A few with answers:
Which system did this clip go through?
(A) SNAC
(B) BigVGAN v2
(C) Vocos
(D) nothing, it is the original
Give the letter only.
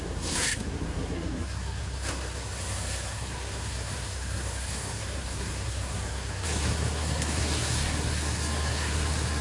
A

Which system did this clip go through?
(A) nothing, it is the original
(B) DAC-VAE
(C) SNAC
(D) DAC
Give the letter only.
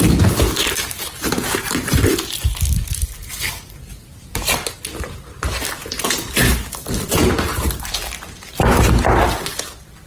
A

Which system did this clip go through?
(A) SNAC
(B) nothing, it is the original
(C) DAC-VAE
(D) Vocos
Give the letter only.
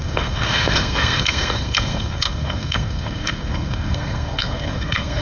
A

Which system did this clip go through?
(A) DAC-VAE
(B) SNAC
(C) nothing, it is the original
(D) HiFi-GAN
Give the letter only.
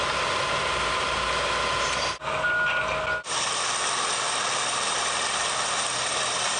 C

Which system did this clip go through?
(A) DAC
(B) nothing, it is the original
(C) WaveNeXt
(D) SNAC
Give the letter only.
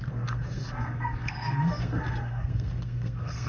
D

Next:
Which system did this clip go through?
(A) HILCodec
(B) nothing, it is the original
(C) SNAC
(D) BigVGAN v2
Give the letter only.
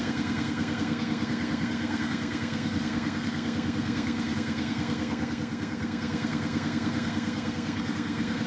C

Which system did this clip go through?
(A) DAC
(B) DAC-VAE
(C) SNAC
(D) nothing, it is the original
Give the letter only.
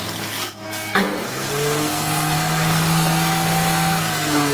C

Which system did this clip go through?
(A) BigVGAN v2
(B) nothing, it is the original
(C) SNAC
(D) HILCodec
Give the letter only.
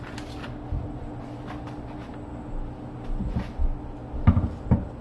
B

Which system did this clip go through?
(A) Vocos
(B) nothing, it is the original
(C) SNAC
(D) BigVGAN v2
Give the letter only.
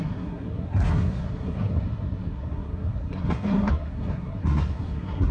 C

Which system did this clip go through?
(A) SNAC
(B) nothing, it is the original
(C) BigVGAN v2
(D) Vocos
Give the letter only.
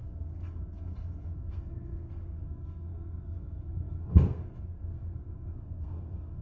A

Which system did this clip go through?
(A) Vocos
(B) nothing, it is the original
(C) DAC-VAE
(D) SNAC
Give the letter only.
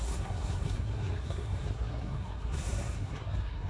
D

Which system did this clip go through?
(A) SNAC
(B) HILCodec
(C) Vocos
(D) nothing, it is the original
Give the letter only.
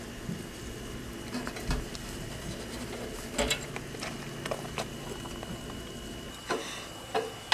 D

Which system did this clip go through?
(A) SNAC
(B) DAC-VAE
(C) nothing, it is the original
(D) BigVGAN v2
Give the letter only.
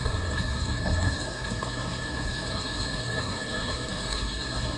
A